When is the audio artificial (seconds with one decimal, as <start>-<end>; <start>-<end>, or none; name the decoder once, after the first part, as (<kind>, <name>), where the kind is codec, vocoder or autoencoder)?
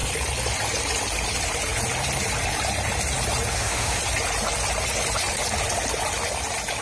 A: 3.5-4.0 (autoencoder, DAC-VAE)